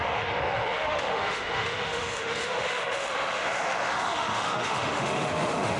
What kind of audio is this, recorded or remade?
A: remade